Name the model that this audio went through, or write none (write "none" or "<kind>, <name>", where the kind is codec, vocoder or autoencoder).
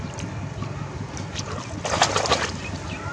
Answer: none